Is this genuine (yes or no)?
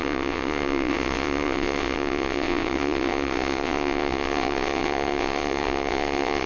no